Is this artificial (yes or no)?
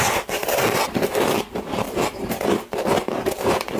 yes